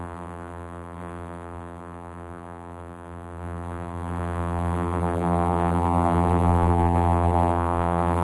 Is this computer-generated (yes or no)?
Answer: yes